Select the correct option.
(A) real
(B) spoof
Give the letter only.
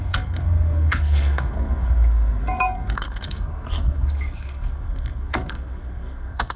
B